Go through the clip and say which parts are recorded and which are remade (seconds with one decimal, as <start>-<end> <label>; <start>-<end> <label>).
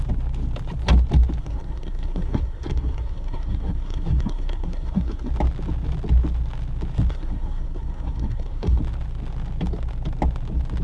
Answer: 0.0-1.4 recorded; 1.4-5.3 remade; 5.3-7.1 recorded; 7.1-8.8 remade; 8.8-10.8 recorded